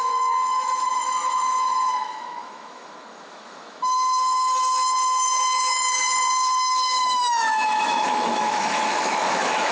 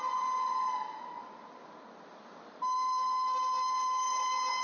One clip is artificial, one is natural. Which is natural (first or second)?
second